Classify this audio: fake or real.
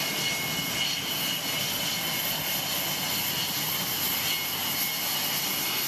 real